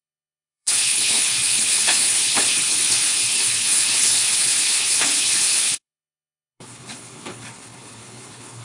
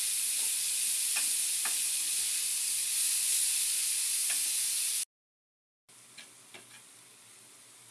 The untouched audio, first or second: second